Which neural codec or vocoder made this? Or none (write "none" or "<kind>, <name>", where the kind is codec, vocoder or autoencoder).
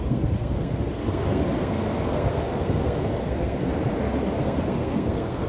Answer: codec, SNAC